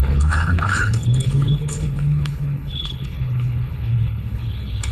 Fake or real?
fake